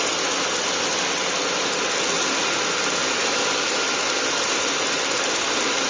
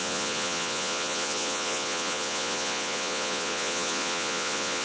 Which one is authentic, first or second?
first